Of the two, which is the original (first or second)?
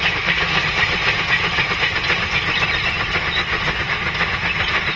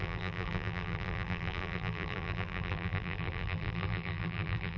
first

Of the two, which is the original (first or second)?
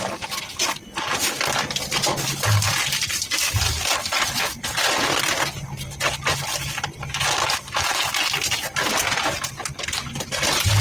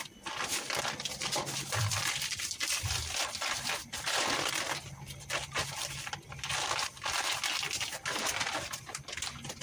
first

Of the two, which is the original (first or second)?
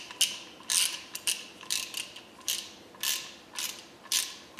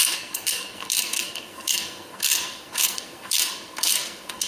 first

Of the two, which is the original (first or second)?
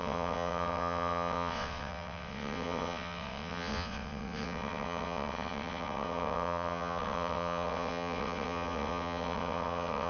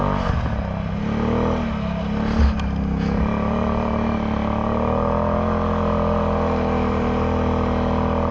second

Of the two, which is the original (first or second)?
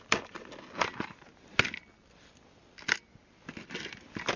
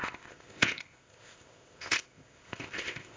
first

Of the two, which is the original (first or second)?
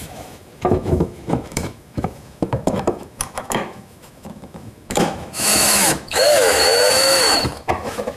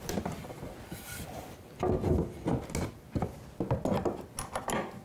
second